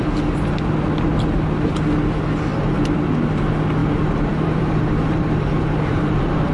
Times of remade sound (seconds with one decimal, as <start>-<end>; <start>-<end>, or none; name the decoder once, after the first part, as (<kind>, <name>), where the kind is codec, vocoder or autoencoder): 2.5-3.0 (vocoder, BigVGAN v2); 3.8-6.5